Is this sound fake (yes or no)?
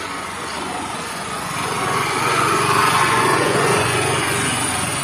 yes